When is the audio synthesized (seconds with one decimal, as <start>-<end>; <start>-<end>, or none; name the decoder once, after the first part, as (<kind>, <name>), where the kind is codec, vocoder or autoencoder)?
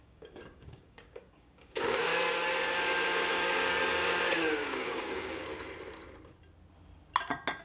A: 0.0-2.1 (codec, DAC); 3.3-5.5